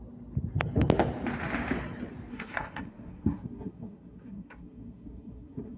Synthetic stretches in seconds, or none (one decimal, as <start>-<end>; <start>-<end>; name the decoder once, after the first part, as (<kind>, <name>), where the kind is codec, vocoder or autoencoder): 2.3-5.8 (codec, SNAC)